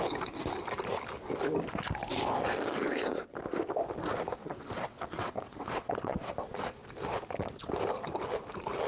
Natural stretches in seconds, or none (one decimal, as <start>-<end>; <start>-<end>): 0.0-4.4; 6.3-8.9